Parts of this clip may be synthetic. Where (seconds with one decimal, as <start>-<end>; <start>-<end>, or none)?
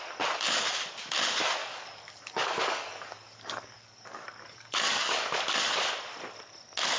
1.6-5.4